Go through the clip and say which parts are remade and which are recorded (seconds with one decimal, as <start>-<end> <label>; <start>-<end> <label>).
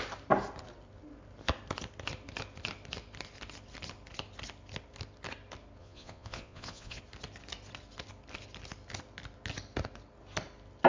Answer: 0.0-5.8 recorded; 5.8-7.0 remade; 7.0-10.9 recorded